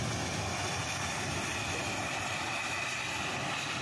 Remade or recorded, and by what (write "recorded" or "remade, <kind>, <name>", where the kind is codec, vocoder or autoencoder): remade, vocoder, BigVGAN v2